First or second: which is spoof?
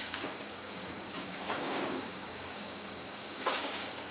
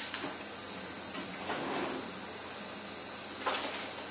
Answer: first